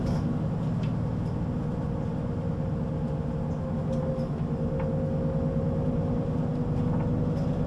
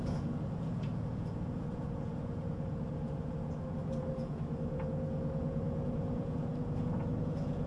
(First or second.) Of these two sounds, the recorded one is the first